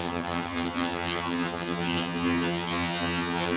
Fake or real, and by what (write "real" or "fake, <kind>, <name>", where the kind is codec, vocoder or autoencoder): fake, vocoder, HiFi-GAN